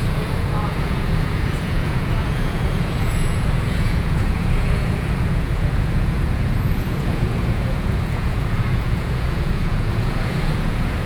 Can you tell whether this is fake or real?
fake